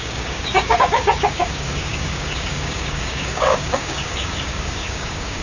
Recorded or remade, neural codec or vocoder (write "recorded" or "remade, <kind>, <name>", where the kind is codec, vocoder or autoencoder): remade, codec, DAC